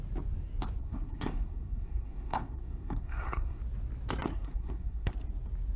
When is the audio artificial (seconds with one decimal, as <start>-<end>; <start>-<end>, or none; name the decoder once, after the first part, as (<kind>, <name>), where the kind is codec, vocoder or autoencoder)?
0.8-3.6 (codec, SNAC); 4.3-5.1